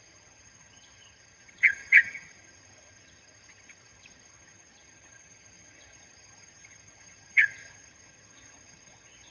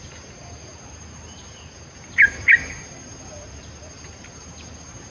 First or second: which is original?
second